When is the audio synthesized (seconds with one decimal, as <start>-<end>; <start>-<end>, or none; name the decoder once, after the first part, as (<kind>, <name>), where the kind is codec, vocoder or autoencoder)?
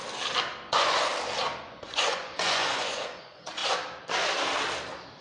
0.7-1.1 (vocoder, Vocos); 1.6-3.6